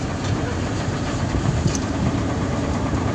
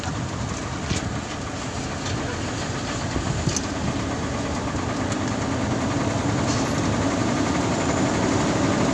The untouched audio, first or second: second